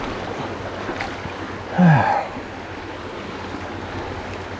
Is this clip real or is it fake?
real